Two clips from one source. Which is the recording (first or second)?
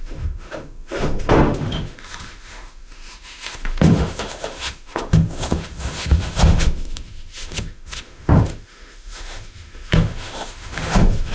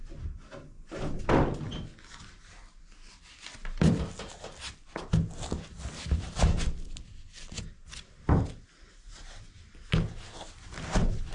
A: second